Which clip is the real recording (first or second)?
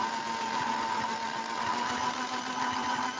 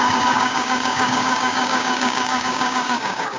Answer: first